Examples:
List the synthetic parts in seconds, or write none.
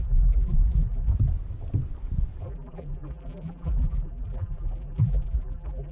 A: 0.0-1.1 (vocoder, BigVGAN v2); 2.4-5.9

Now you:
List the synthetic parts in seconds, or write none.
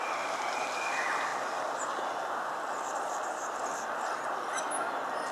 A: none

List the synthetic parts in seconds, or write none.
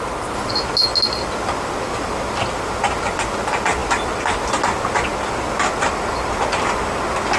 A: none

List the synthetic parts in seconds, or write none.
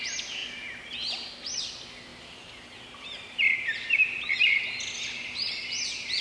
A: 2.1-5.8 (vocoder, BigVGAN v2)